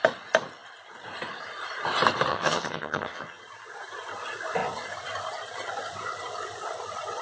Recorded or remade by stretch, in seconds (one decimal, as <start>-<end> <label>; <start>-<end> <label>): 0.0-2.3 recorded; 2.3-3.4 remade; 3.4-7.2 recorded